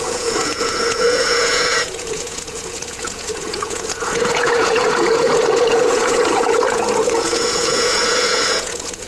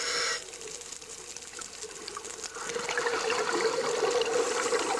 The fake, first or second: first